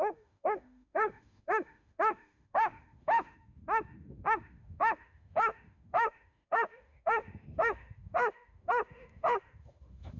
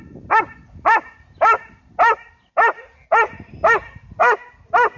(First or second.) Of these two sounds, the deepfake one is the first